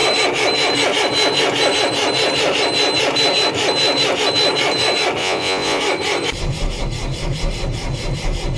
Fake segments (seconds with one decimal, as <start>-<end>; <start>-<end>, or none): 5.2-5.8